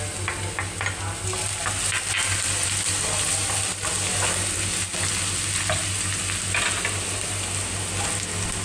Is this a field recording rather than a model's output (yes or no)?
yes